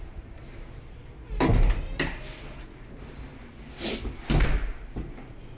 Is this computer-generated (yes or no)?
no